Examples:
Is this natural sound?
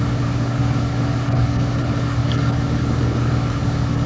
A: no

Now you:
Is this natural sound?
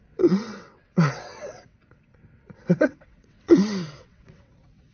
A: no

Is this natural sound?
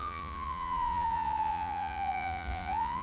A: no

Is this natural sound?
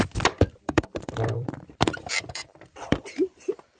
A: no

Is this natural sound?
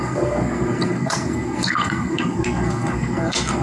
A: no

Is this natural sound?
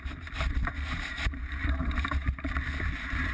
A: no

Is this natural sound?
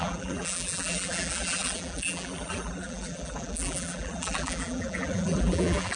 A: no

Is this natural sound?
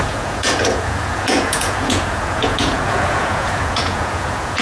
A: no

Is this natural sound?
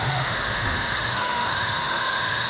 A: no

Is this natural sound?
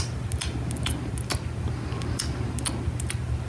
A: yes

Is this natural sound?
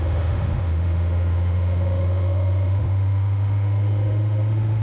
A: no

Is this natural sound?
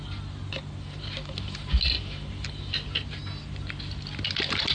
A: yes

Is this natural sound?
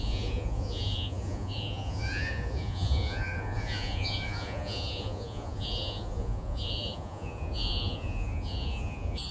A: no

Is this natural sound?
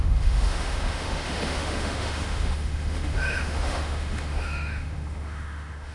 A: no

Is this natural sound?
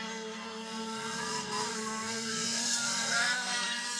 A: no